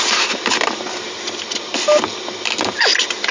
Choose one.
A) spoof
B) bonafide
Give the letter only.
B